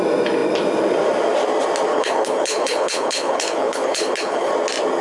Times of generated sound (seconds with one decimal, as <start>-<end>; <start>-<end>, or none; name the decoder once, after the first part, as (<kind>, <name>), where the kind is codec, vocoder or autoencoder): 1.9-4.5 (codec, HILCodec)

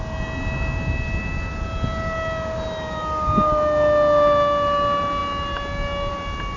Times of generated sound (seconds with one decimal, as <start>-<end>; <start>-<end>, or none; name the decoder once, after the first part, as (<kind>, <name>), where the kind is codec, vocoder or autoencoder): none

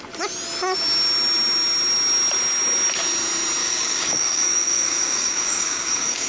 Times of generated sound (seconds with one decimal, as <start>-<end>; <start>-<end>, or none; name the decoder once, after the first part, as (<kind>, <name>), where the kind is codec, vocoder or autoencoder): 3.6-6.3 (codec, DAC)

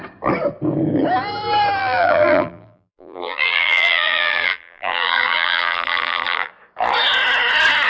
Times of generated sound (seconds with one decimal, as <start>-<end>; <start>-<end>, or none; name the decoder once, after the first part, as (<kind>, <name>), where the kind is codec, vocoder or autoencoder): 1.8-6.5 (vocoder, BigVGAN v2)

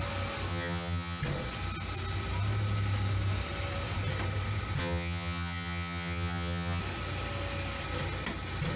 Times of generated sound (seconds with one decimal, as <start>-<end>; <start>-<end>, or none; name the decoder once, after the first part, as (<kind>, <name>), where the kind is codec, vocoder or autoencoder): 0.5-1.2 (vocoder, HiFi-GAN); 4.8-6.8